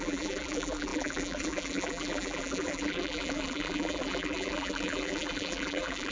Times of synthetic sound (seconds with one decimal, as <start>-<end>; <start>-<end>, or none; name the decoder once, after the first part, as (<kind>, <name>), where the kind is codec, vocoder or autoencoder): 0.0-6.1 (vocoder, BigVGAN v2)